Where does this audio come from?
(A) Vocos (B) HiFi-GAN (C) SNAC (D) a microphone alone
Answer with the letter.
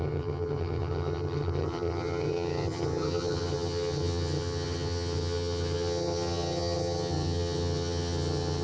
B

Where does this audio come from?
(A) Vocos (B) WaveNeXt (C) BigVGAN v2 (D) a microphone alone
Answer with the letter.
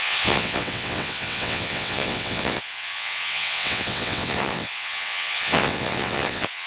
B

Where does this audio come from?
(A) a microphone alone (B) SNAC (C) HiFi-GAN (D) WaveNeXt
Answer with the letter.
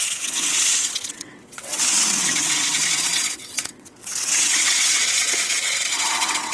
D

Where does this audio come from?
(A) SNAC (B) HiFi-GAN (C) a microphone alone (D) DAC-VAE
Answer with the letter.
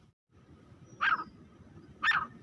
C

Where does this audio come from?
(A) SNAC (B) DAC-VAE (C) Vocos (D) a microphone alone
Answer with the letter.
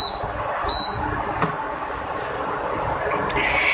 D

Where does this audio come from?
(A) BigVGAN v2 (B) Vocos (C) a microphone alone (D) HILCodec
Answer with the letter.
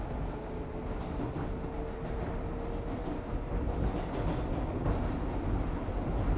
C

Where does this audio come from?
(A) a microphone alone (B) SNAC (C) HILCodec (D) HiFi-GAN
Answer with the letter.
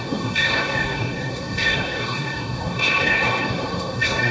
B